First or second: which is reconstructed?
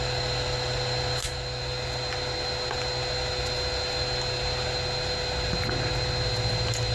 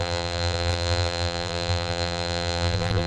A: second